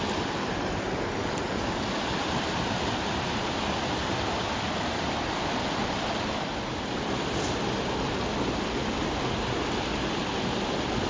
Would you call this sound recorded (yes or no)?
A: yes